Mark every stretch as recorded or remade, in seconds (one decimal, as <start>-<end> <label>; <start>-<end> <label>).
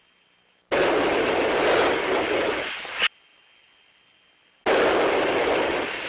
0.0-6.1 recorded